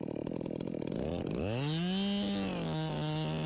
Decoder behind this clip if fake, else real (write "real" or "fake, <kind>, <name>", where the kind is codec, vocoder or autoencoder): real